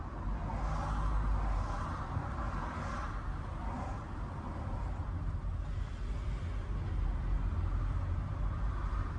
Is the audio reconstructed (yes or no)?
no